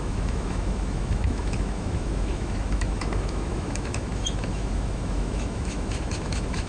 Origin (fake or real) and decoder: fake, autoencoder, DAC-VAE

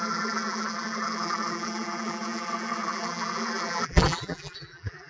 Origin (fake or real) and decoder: fake, vocoder, BigVGAN v2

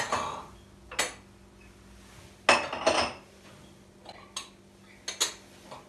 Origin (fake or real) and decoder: real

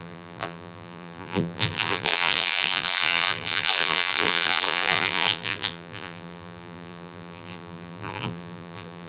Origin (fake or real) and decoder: fake, vocoder, BigVGAN v2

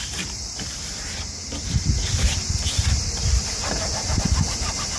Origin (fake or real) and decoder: fake, vocoder, BigVGAN v2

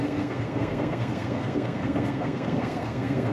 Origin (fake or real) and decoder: fake, codec, SNAC